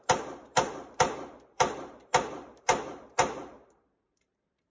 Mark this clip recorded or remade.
remade